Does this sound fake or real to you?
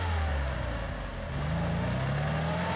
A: real